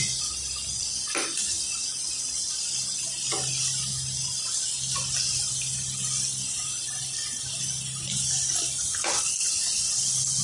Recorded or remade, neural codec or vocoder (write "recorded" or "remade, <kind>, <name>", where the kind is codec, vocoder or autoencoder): recorded